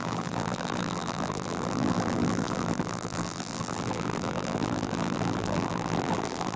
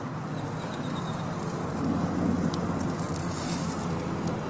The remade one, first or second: first